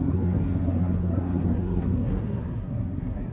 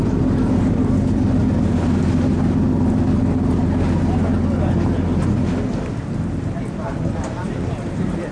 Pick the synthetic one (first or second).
first